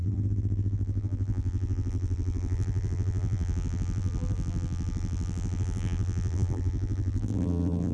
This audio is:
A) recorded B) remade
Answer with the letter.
B